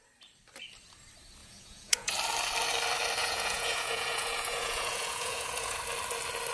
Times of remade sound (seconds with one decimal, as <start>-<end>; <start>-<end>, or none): 1.4-2.1; 3.2-5.8